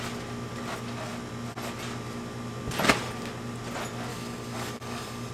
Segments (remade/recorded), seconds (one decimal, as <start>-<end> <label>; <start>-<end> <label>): 0.0-4.1 recorded; 4.1-5.3 remade